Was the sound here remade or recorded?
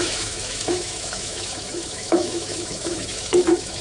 remade